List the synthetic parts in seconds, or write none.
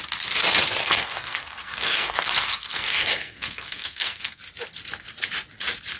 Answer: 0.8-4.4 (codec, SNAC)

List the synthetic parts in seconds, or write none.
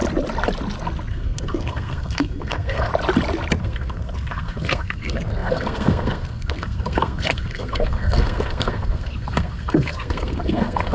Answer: 1.1-2.9 (codec, SNAC); 3.6-10.9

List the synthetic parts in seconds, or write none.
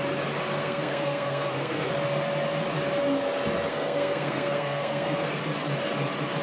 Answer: 0.6-1.9 (codec, SNAC); 3.7-5.4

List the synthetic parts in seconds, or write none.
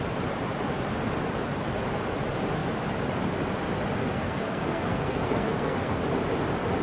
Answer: 4.1-6.0 (codec, SNAC)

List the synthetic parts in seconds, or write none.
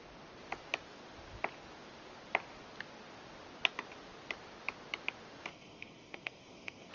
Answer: 5.5-6.9 (codec, SNAC)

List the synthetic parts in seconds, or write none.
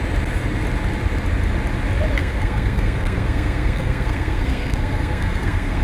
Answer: 2.2-5.8 (codec, SNAC)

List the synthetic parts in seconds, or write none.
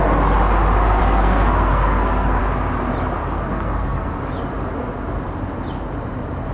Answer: 1.0-2.4 (codec, SNAC); 3.2-4.2